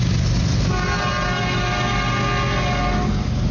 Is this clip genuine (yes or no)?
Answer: yes